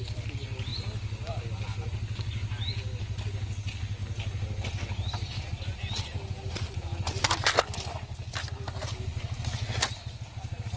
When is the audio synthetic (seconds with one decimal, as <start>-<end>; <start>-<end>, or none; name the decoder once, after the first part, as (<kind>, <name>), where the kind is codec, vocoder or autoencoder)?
none